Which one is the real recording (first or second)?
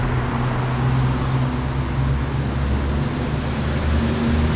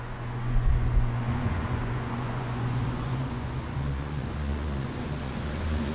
first